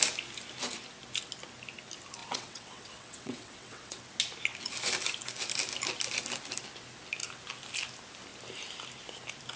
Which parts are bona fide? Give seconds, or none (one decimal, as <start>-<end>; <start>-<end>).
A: 0.0-2.2; 4.0-9.6